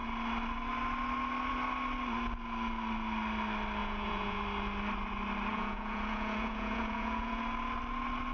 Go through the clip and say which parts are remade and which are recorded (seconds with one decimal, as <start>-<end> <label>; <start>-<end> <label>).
0.0-3.8 recorded; 3.8-4.4 remade; 4.4-5.5 recorded; 5.5-7.4 remade; 7.4-8.3 recorded